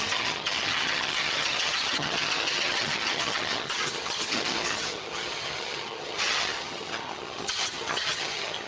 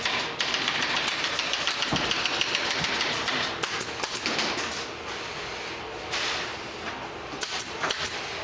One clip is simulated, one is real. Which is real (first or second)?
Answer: second